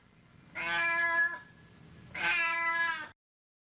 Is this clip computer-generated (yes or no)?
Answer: no